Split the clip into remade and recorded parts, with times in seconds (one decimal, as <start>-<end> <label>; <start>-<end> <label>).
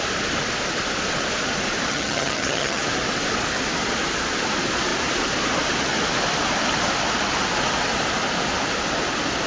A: 0.0-1.9 recorded; 1.9-2.8 remade; 2.8-9.5 recorded